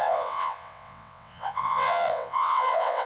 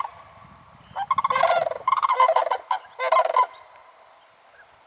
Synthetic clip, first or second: first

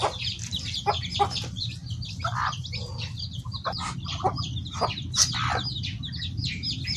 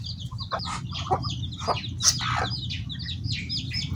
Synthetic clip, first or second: first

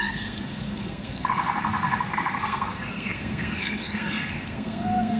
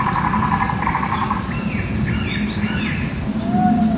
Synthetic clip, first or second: first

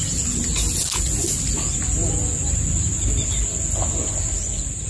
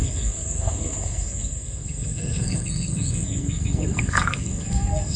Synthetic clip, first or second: second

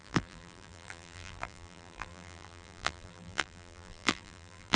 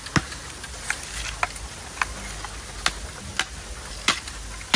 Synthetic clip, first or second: first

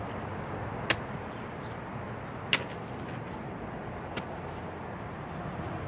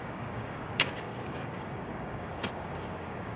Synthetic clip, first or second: second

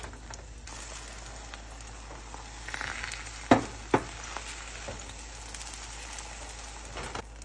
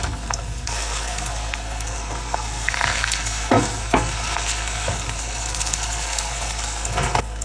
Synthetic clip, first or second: second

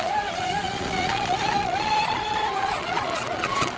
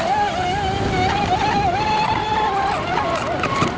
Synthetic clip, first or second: first